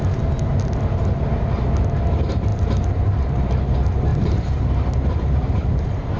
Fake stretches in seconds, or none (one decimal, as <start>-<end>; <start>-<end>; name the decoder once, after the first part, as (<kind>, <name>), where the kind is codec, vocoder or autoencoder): 2.5-3.4 (vocoder, BigVGAN v2); 4.1-4.7

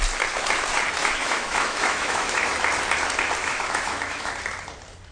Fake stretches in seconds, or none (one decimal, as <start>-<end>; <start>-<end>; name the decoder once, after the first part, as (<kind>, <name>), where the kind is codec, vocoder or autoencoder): 1.0-2.5 (autoencoder, DAC-VAE); 3.4-4.3

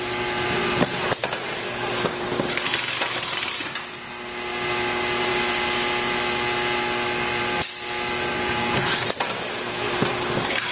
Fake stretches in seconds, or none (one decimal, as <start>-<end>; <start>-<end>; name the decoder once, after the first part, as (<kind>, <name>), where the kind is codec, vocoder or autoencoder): 1.2-1.8 (codec, DAC)

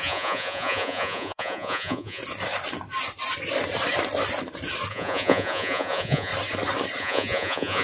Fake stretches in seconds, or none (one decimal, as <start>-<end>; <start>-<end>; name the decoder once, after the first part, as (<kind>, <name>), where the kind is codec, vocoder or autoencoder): 0.0-2.2 (vocoder, Vocos); 4.9-6.3; 7.0-7.8

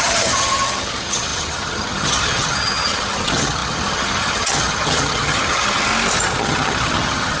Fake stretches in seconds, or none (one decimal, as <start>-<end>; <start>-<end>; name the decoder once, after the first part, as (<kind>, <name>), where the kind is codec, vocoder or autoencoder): 0.0-5.9 (vocoder, HiFi-GAN); 6.4-7.4

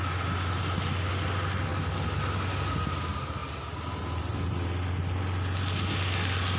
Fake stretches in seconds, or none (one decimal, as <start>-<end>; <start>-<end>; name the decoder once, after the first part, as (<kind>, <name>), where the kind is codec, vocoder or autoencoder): none

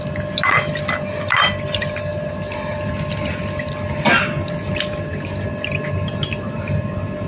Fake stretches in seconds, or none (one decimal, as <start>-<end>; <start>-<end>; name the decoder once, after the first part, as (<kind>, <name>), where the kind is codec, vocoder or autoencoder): none

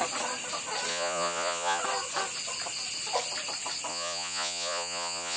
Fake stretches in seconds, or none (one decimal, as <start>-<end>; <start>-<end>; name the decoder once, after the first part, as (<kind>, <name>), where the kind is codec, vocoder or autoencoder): 0.9-1.8 (vocoder, Vocos); 3.9-5.4